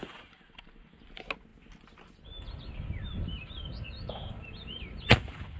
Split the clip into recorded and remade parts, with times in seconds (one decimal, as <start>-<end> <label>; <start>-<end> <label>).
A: 0.0-1.0 remade; 1.0-5.6 recorded